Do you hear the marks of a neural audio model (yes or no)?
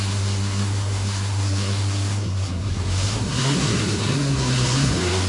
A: yes